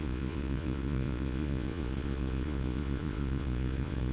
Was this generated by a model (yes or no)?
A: yes